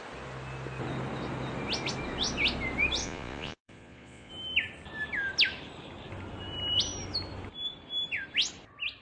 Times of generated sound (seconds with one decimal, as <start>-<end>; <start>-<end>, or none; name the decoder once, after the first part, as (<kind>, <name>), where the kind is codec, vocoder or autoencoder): 3.0-4.3 (vocoder, Vocos)